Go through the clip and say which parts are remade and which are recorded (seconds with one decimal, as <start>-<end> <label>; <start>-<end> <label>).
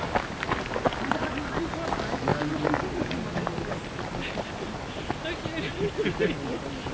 0.0-6.9 recorded